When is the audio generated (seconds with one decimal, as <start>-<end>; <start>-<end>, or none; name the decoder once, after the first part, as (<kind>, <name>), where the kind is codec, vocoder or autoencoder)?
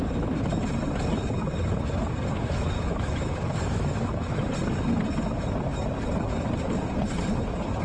2.4-4.4 (autoencoder, DAC-VAE)